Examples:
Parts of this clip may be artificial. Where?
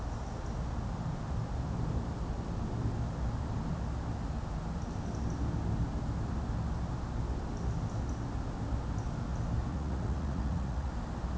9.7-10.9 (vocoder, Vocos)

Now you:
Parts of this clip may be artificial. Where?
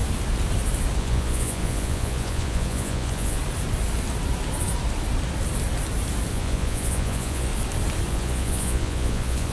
1.0-3.4 (vocoder, Vocos); 6.3-7.5; 8.1-9.5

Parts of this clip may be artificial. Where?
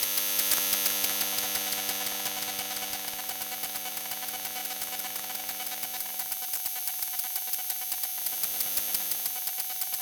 none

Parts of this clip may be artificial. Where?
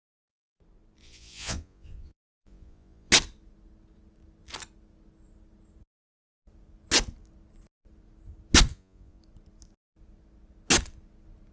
1.0-3.1 (vocoder, Vocos); 8.7-9.2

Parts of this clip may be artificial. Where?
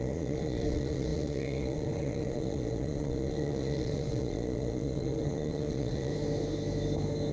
0.0-6.1 (vocoder, Vocos)